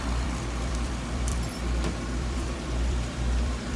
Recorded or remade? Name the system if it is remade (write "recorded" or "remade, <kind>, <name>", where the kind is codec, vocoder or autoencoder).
remade, vocoder, BigVGAN v2